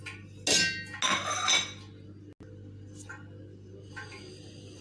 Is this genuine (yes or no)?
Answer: yes